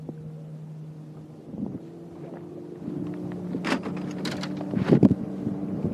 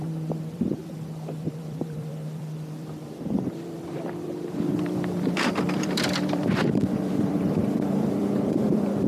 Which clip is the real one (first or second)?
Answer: first